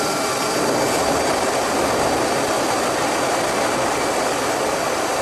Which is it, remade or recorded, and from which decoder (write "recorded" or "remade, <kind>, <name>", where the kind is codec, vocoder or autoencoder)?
recorded